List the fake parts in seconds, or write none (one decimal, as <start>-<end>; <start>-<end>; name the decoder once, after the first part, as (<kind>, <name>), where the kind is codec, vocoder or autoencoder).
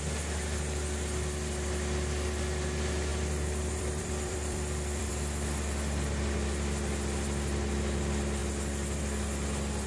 3.1-5.1 (vocoder, BigVGAN v2)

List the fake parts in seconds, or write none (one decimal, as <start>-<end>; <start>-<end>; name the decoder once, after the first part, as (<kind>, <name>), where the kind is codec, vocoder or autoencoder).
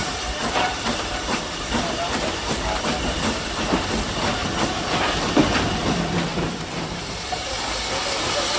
0.0-3.9 (vocoder, BigVGAN v2); 6.3-7.5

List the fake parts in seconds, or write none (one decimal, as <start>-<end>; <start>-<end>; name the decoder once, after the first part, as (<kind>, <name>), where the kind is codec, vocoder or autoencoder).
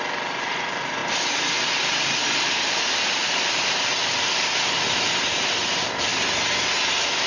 0.0-1.0 (vocoder, BigVGAN v2); 3.1-6.1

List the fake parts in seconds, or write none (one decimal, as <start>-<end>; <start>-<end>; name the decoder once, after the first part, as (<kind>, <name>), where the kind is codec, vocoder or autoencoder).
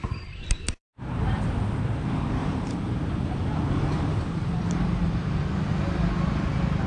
0.0-1.4 (vocoder, BigVGAN v2); 2.4-3.3; 4.1-5.4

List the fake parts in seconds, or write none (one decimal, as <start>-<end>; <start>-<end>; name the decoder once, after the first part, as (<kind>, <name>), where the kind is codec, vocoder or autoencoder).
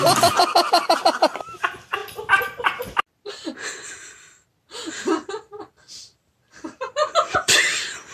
0.0-2.0 (vocoder, BigVGAN v2); 4.9-8.1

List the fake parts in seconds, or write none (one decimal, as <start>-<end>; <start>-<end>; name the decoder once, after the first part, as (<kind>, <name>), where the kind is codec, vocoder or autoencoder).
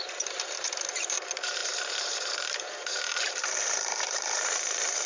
0.0-5.1 (vocoder, BigVGAN v2)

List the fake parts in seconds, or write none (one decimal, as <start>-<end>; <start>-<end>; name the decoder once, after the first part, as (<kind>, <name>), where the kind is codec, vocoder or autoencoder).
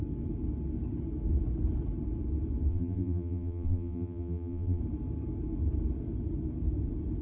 2.7-4.8 (vocoder, BigVGAN v2)